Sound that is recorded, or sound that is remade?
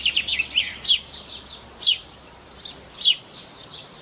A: remade